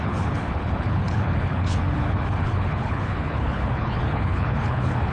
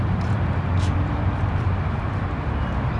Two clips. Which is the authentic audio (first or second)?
second